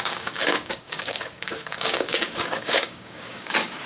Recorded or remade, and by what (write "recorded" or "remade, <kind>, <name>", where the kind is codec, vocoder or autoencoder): remade, codec, DAC